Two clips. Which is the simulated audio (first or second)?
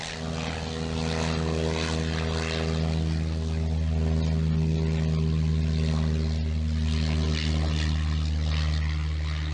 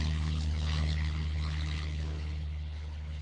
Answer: second